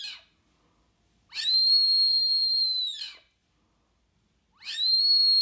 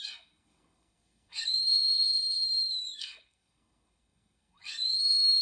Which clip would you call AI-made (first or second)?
second